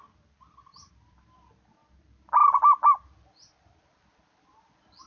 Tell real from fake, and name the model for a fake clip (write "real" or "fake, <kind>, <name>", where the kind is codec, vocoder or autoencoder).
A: real